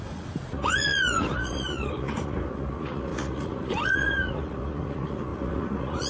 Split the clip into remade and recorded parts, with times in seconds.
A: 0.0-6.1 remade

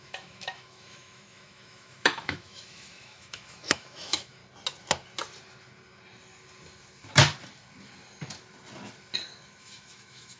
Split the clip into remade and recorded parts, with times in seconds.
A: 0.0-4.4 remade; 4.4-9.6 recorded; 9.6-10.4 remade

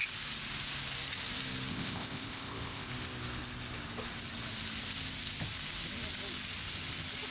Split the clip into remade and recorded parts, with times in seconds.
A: 0.0-1.7 recorded; 1.7-2.9 remade; 2.9-7.3 recorded